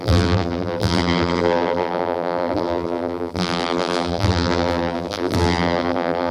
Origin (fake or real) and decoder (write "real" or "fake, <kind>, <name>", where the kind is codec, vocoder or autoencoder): fake, vocoder, BigVGAN v2